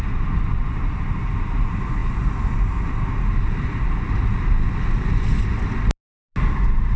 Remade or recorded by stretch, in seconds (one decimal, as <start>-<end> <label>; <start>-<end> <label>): 0.0-7.0 recorded